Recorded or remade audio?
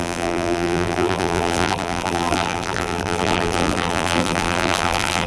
remade